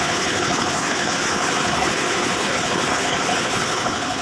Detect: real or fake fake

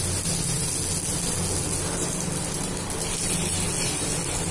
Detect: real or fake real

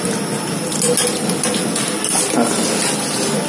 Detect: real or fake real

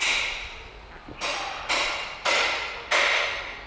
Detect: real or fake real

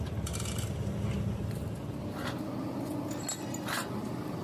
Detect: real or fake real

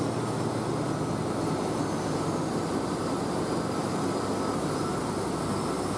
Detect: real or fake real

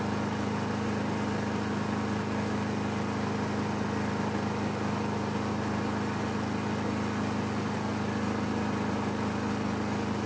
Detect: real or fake real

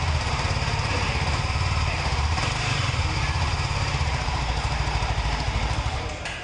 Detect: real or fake fake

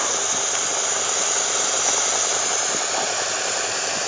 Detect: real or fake real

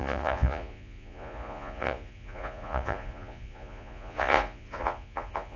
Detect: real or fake fake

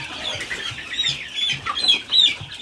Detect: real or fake real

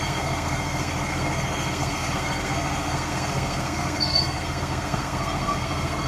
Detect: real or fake fake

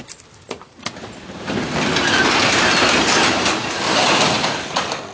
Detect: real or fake real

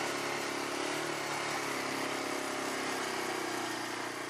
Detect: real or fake real